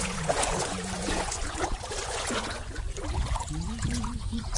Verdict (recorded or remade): remade